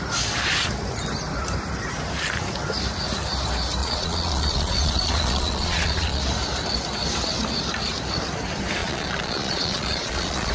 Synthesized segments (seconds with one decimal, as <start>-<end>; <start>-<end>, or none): 3.8-6.2; 8.8-10.5